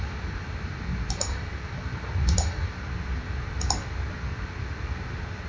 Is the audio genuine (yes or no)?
yes